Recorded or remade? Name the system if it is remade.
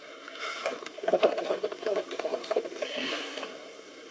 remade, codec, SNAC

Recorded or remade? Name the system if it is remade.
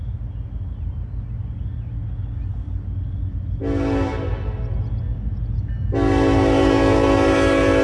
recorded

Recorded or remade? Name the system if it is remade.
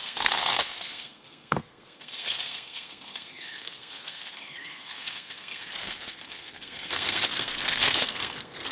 remade, codec, SNAC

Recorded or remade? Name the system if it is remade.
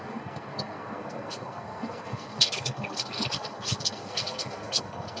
remade, codec, SNAC